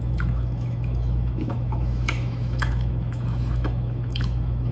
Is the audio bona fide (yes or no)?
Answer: no